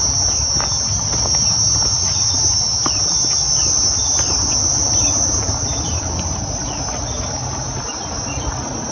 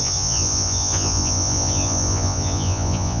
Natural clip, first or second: first